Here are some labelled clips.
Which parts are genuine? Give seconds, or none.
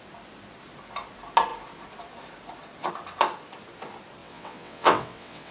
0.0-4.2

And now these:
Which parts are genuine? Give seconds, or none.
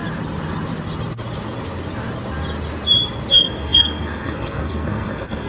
0.0-3.3